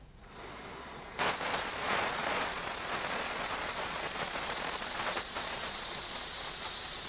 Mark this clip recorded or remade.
remade